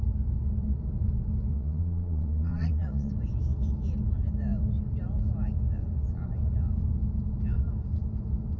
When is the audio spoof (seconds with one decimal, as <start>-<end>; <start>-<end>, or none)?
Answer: 1.5-3.1